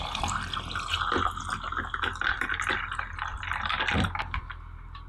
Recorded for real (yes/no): yes